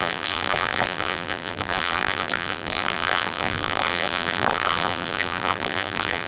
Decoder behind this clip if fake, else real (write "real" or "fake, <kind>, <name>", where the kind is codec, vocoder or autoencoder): fake, vocoder, BigVGAN v2